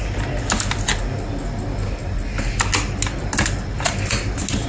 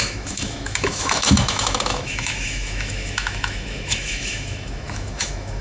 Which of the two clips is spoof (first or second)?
second